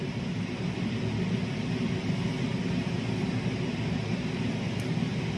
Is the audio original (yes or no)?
yes